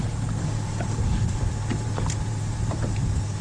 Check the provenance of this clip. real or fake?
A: fake